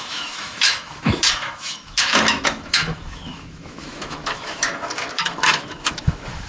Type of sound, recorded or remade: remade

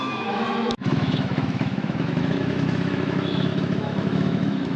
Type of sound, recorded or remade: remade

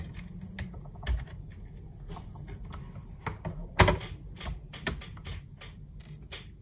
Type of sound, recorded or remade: recorded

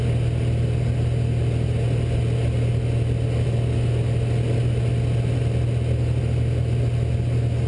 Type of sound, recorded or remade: recorded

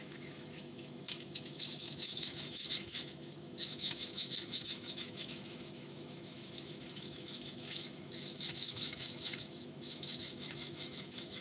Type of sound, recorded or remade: remade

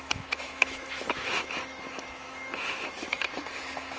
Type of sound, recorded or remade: remade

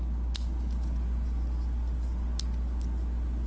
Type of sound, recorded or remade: recorded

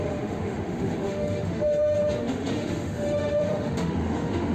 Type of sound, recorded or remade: remade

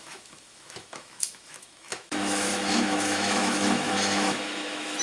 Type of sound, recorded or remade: remade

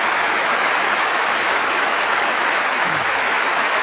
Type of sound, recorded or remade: remade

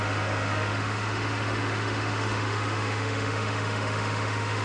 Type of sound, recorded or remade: remade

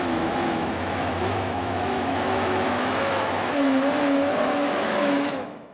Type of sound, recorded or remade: remade